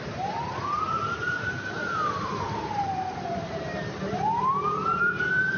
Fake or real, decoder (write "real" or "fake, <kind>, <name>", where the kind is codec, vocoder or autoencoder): fake, vocoder, BigVGAN v2